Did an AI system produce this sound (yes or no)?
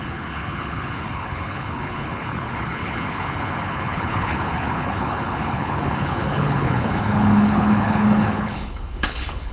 yes